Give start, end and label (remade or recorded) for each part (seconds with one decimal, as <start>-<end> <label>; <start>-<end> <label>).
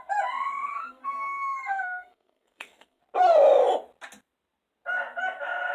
0.0-0.7 recorded; 0.7-3.0 remade; 3.0-5.7 recorded